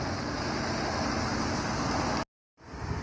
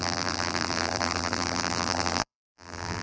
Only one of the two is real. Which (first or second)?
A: first